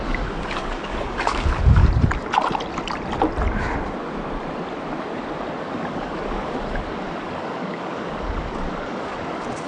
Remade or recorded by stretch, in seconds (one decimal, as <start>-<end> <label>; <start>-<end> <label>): 0.0-1.8 remade; 1.8-5.6 recorded; 5.6-9.7 remade